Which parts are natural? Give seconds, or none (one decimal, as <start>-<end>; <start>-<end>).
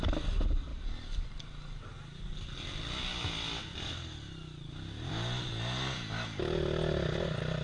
0.0-7.6